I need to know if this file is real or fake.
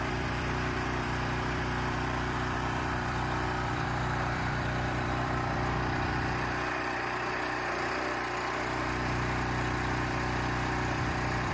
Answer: fake